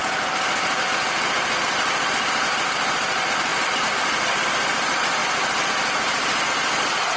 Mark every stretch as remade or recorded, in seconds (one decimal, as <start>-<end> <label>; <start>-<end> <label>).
0.0-7.2 recorded